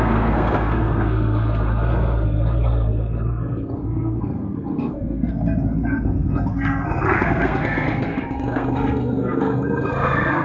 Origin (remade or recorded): remade